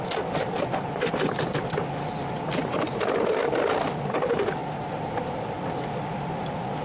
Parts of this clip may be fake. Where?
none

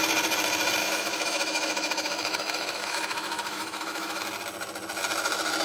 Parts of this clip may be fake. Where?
0.8-4.2 (autoencoder, DAC-VAE)